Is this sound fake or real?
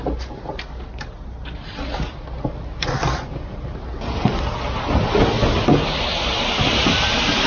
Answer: real